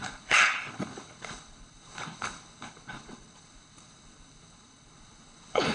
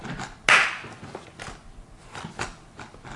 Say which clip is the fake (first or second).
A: first